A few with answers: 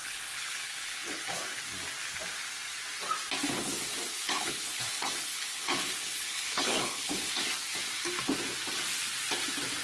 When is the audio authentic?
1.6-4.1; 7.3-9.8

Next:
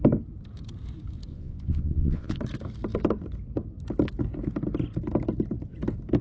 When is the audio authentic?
0.0-1.3; 2.4-6.2

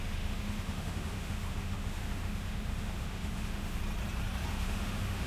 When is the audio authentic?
3.8-4.5

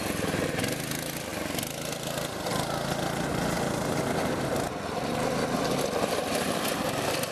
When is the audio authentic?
0.0-7.3